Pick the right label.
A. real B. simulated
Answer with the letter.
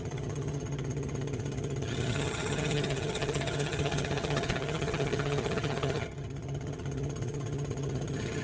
B